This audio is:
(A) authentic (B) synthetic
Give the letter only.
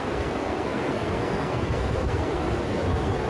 B